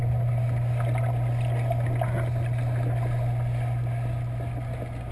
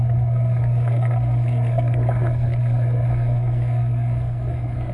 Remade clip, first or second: second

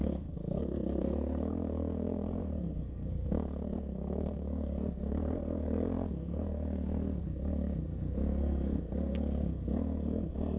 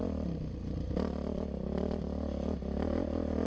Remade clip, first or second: first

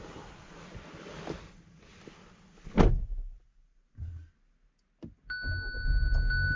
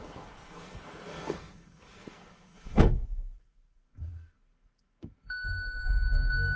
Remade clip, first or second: second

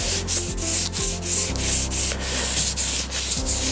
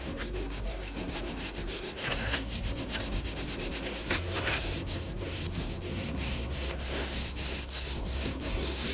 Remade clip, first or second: second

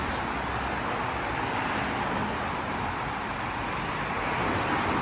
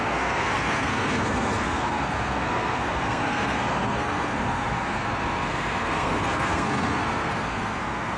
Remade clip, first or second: second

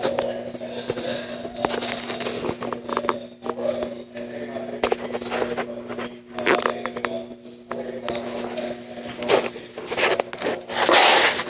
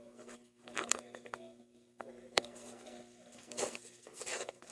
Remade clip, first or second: second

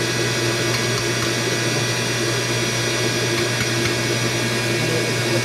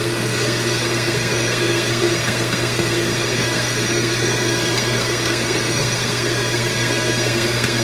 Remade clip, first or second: second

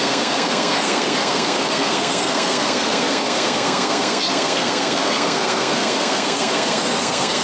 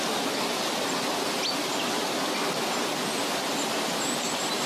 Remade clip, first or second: first